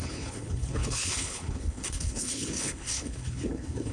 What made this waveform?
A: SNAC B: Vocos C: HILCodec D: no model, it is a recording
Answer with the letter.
C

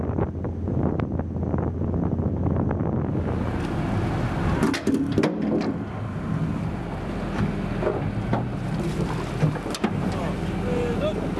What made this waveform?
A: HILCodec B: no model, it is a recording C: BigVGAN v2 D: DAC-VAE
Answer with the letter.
B